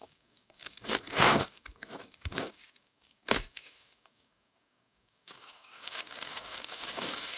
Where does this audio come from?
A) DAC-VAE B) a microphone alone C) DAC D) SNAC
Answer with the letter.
C